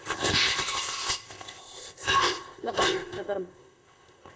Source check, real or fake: fake